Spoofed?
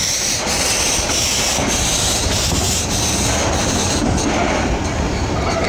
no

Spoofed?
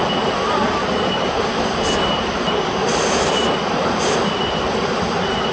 no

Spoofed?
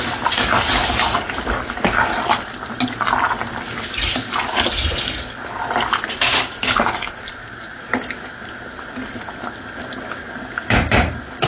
no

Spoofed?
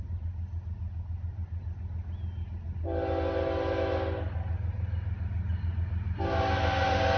no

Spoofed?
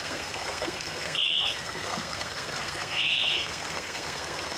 yes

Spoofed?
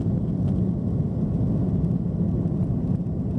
no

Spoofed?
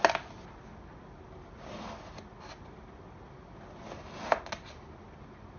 no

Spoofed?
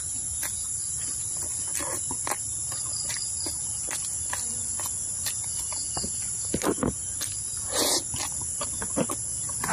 no